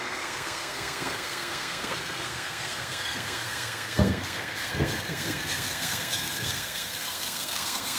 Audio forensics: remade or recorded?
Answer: remade